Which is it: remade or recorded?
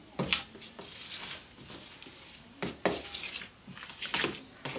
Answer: recorded